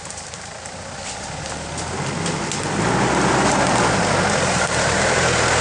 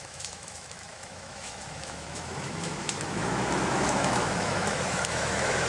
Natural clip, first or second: first